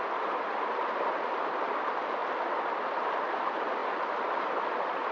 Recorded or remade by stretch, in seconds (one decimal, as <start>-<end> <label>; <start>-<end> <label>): 0.0-5.1 recorded